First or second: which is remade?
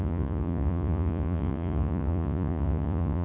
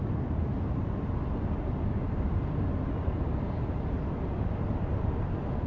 first